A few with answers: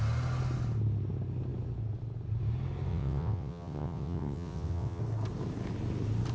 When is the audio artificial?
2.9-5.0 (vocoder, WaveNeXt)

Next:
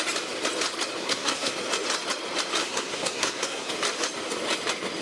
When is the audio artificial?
1.0-1.5 (codec, SNAC); 2.6-3.7